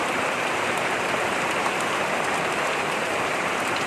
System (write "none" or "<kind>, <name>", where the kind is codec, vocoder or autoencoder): vocoder, BigVGAN v2